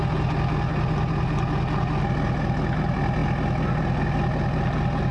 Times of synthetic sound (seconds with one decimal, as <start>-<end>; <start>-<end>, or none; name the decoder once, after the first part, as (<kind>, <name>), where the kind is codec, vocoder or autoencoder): none